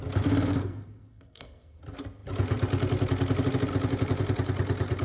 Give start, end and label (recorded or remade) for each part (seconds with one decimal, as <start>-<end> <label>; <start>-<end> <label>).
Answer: 0.0-0.5 recorded; 0.5-1.8 remade; 1.8-5.0 recorded